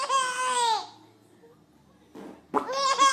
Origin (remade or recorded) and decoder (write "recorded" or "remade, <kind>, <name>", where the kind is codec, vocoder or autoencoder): recorded